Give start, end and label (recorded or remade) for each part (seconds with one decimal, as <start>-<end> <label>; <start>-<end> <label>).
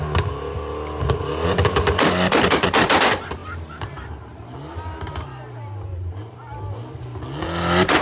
0.0-3.4 recorded; 3.4-6.9 remade; 6.9-8.0 recorded